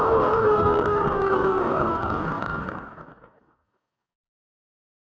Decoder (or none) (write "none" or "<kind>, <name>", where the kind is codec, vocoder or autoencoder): codec, DAC